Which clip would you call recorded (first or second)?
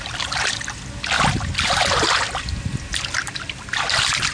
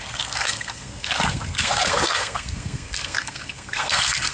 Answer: first